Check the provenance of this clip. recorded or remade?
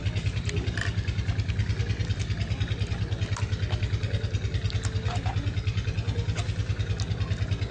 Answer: recorded